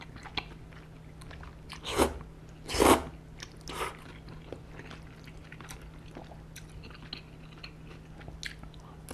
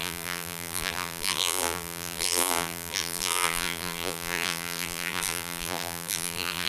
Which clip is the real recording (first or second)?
first